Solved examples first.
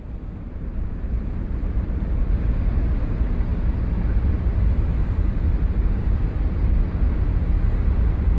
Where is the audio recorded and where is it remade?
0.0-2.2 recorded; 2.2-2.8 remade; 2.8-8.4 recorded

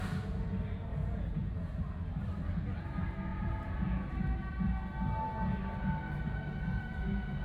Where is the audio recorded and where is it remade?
0.0-0.9 recorded; 0.9-1.8 remade; 1.8-3.3 recorded; 3.3-4.1 remade; 4.1-7.4 recorded

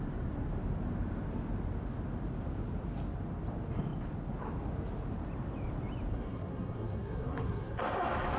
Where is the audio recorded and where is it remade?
0.0-6.1 recorded; 6.1-7.8 remade; 7.8-8.4 recorded

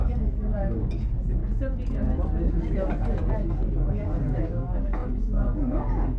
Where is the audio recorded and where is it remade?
0.0-1.4 remade; 1.4-2.5 recorded; 2.5-6.2 remade

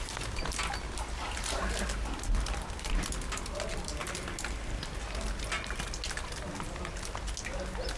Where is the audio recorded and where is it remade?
0.0-8.0 recorded

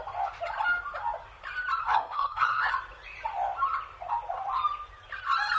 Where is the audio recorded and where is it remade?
0.0-1.8 recorded; 1.8-2.7 remade; 2.7-5.6 recorded